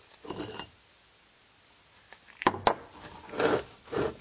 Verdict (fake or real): real